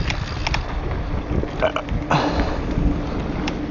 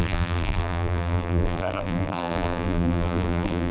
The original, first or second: first